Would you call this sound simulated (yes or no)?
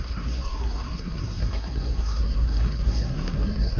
yes